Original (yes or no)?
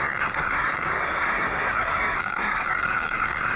no